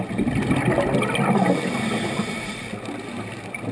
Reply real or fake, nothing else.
real